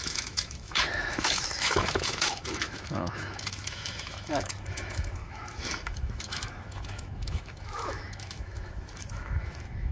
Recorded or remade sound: remade